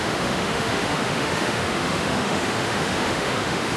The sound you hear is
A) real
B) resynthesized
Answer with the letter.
B